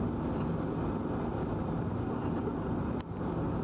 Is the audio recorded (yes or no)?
yes